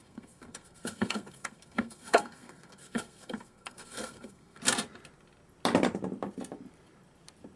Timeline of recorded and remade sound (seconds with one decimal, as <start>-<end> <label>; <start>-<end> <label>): 0.0-4.6 remade; 4.6-7.6 recorded